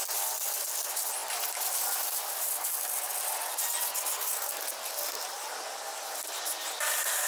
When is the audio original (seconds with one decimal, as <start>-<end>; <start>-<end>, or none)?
0.0-7.3